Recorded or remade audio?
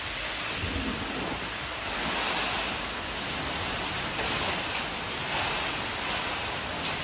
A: recorded